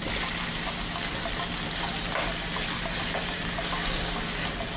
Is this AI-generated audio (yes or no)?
no